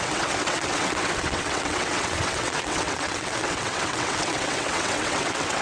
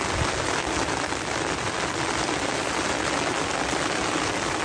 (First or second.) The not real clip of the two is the first